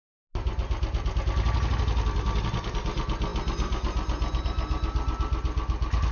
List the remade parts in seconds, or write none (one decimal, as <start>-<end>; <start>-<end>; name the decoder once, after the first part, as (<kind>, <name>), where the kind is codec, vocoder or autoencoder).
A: none